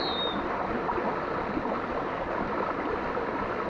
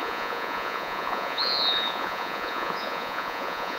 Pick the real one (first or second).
first